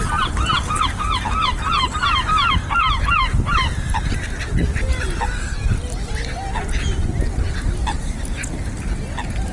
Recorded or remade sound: recorded